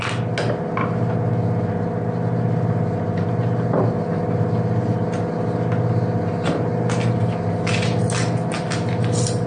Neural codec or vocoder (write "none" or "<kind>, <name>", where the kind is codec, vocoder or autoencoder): none